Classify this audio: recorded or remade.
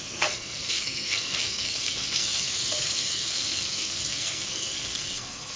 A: remade